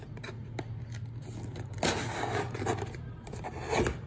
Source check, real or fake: real